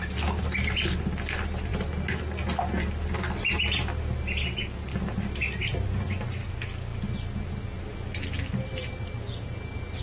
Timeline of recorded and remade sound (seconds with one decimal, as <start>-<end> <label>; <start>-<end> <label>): 0.0-1.7 remade; 1.7-3.3 recorded; 3.3-6.9 remade; 6.9-10.0 recorded